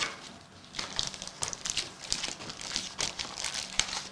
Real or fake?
fake